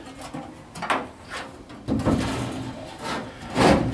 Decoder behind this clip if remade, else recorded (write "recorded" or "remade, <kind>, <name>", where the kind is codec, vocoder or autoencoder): recorded